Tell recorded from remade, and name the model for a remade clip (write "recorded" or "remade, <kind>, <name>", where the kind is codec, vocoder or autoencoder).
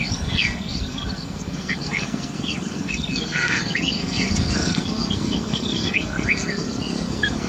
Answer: remade, codec, SNAC